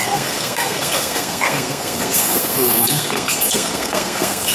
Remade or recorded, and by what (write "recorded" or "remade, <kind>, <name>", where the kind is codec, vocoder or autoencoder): remade, codec, SNAC